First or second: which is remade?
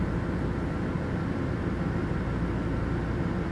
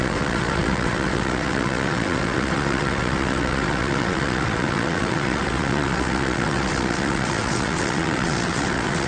second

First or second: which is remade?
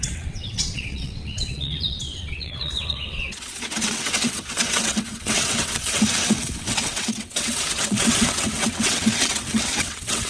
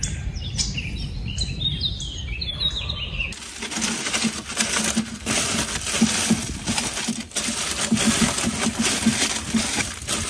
first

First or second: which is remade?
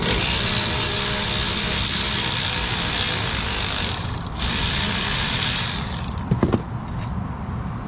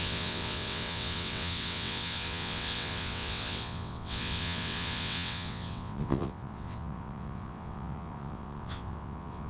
second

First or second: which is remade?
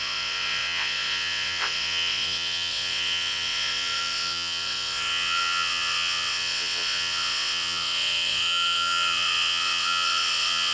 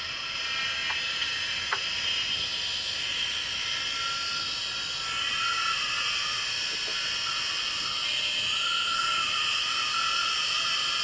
first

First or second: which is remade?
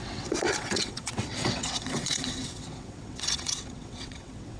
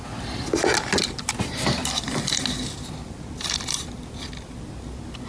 first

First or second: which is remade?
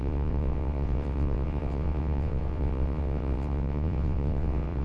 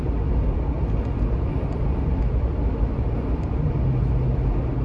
first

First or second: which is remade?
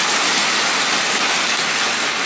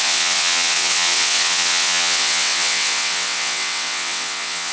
second